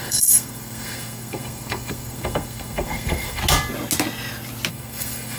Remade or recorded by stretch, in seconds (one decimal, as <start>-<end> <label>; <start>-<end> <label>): 0.0-3.4 remade; 3.4-4.7 recorded; 4.7-5.4 remade